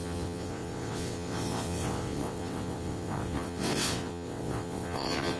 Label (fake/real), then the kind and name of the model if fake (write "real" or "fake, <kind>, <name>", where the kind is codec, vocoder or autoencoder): fake, vocoder, WaveNeXt